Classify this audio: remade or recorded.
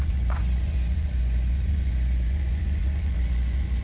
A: remade